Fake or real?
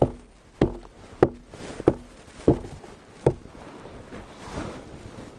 real